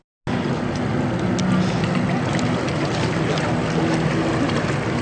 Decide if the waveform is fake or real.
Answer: real